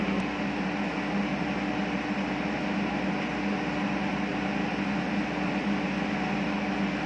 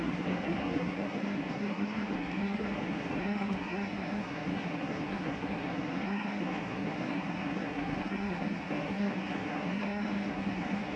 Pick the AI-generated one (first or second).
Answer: second